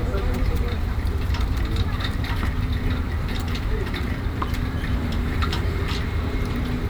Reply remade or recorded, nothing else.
remade